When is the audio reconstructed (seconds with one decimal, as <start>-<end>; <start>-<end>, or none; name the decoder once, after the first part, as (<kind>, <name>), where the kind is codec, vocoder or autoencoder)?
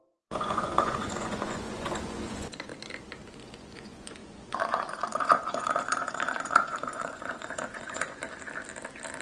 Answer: 0.0-2.7 (vocoder, Vocos); 3.3-8.2